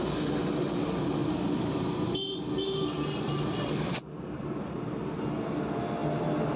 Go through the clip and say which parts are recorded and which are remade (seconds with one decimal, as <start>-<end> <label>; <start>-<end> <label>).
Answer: 0.0-1.2 recorded; 1.2-5.2 remade; 5.2-6.6 recorded